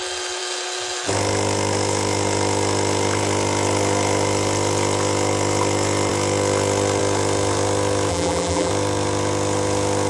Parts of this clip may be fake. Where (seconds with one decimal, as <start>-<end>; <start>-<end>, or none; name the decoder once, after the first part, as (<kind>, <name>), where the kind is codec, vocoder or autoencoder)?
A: 8.1-8.7 (vocoder, BigVGAN v2)